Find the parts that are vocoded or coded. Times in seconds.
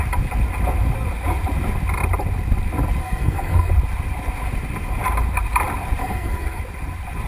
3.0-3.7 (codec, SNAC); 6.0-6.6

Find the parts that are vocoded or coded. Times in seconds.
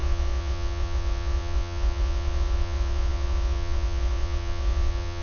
0.0-5.2 (vocoder, Vocos)